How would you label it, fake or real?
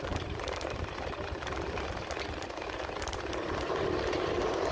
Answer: fake